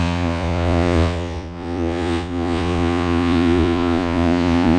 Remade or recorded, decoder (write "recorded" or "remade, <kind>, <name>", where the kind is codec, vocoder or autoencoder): remade, vocoder, Vocos